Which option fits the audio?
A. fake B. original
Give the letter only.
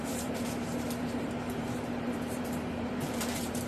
A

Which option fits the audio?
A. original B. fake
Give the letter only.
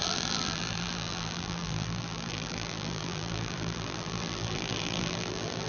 B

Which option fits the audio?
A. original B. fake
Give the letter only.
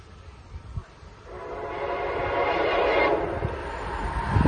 A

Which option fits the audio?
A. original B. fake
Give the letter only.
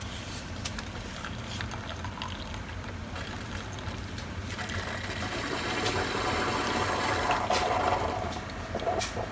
A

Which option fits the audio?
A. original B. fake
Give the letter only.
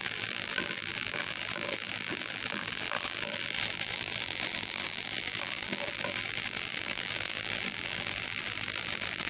B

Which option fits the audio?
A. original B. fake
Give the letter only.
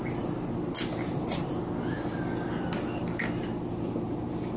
A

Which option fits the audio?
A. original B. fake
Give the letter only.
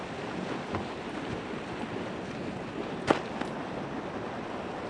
A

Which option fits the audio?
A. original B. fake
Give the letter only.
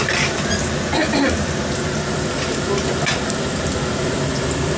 B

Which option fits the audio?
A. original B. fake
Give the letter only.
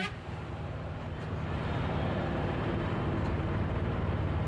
B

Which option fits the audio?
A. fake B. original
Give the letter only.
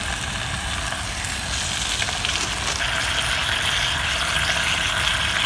B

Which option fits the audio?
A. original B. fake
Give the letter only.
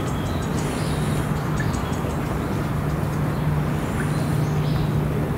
A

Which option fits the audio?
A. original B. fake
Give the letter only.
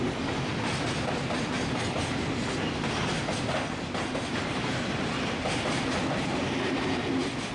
A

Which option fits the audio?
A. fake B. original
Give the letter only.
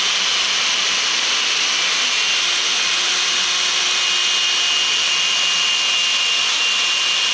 B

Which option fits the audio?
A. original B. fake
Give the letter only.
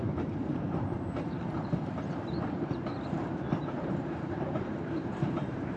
B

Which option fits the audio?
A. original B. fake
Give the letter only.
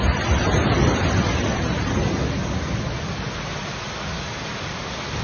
A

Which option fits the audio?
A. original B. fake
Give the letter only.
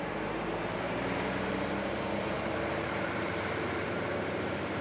B